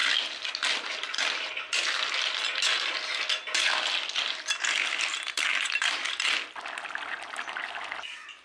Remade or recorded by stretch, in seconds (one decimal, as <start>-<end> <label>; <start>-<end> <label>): 0.0-8.4 recorded

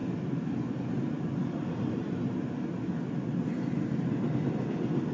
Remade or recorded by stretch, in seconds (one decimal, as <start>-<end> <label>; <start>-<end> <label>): 0.0-5.1 recorded

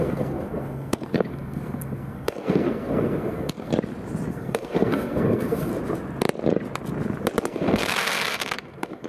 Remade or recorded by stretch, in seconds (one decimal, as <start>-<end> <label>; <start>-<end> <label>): 0.0-3.7 remade; 3.7-4.3 recorded; 4.3-5.7 remade; 5.7-7.4 recorded; 7.4-9.1 remade

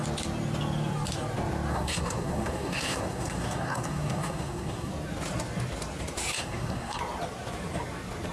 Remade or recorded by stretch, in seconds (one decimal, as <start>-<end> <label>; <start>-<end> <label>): 0.0-1.7 recorded; 1.7-4.9 remade; 4.9-6.4 recorded; 6.4-7.0 remade; 7.0-8.3 recorded

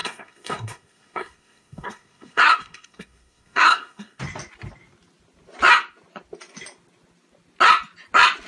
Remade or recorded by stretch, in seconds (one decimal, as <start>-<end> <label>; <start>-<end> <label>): 0.0-4.2 remade; 4.2-8.5 recorded

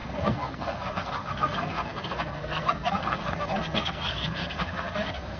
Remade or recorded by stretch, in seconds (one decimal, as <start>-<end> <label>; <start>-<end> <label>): 0.0-5.4 remade